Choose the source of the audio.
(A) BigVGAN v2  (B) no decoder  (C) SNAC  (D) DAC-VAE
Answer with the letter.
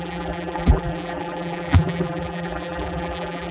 A